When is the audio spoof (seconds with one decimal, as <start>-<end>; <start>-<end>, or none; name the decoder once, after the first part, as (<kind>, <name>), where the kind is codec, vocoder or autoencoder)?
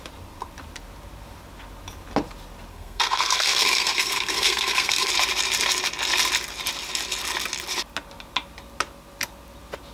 2.7-5.1 (codec, SNAC)